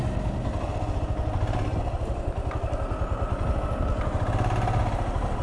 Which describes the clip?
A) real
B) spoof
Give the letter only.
A